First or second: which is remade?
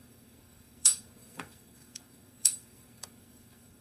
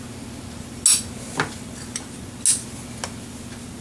first